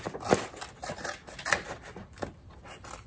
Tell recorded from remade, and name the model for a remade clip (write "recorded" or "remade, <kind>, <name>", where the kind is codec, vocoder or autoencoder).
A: recorded